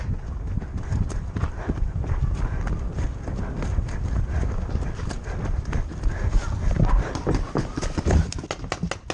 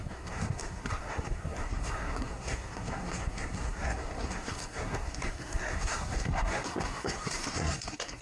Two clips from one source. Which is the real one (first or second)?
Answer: first